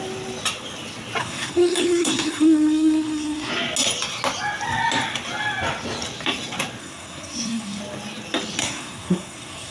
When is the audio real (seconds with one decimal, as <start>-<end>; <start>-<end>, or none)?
0.0-1.2; 3.5-6.8; 7.8-8.6